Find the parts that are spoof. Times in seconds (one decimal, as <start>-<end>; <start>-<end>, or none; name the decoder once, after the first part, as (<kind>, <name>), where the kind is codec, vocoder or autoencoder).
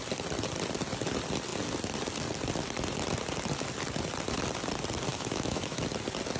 5.1-5.8 (autoencoder, DAC-VAE)